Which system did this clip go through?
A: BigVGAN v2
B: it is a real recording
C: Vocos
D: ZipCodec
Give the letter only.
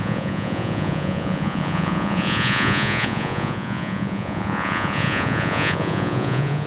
C